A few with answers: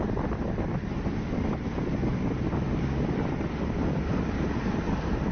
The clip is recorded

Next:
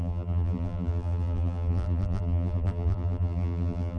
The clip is remade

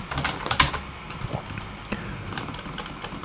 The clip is recorded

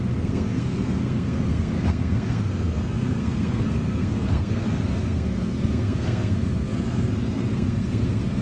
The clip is remade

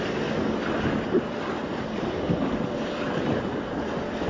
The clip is recorded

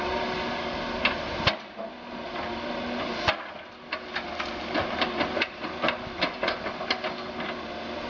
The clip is recorded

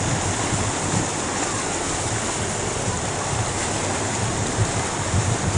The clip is recorded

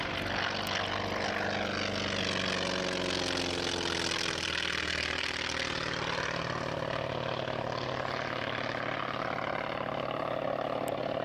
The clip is recorded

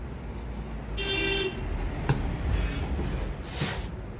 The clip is recorded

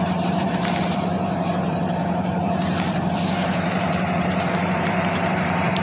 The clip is remade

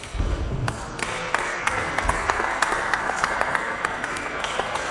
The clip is remade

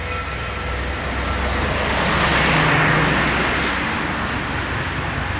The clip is recorded